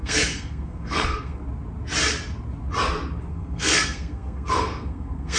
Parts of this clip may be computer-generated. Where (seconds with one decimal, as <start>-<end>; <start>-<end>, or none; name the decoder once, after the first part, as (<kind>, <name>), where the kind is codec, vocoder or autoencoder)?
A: 0.0-1.4 (codec, SNAC); 3.3-5.4